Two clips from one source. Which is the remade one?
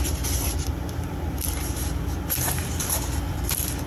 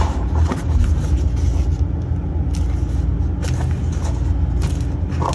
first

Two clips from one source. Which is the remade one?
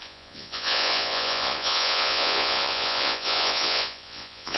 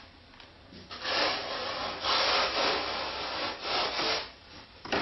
first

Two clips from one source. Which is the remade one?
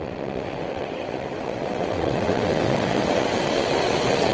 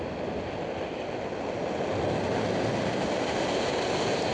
first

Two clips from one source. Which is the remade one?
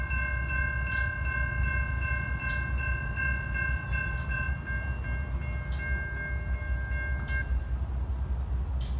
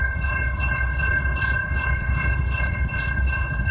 second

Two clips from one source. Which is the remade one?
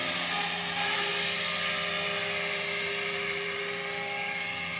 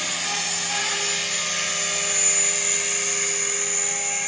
first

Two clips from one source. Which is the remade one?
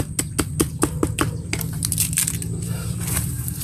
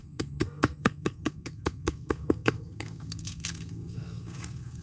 second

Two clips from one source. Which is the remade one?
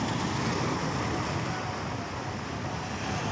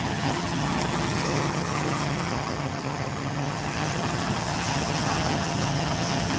second